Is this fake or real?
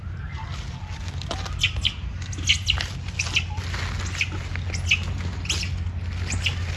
real